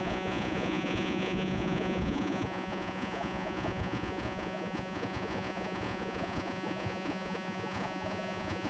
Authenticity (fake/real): fake